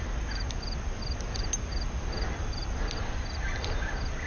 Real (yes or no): yes